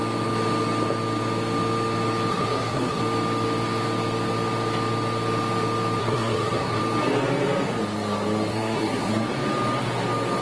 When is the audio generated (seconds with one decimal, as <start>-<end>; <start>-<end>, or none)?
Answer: 2.3-3.0; 6.0-6.8; 8.5-9.1

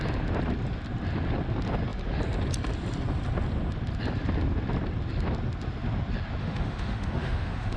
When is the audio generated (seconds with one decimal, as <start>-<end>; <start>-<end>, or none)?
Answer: 6.4-7.8

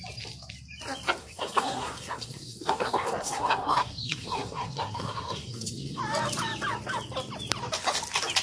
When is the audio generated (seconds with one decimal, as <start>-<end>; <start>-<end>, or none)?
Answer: 1.2-6.0

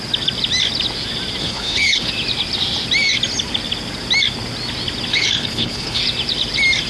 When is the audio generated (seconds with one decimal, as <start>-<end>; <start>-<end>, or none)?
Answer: 1.4-2.1; 5.1-6.0

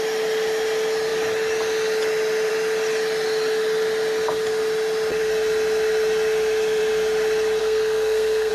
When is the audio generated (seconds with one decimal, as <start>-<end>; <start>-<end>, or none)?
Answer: 7.6-8.5

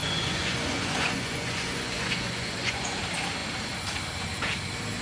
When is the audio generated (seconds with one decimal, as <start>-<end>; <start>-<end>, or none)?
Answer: 0.0-3.0

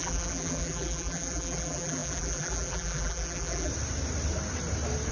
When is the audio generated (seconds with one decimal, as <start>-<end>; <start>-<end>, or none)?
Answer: 0.0-3.7

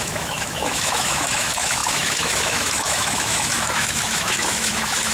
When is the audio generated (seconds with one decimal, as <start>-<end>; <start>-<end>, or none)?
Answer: 0.0-5.1